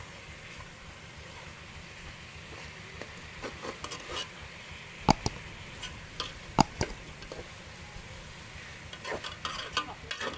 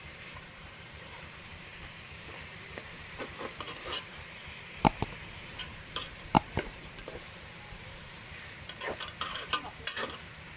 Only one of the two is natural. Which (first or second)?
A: first